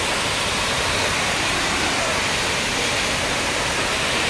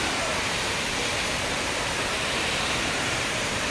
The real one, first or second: first